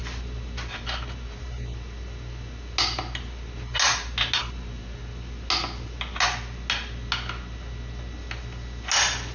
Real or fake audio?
real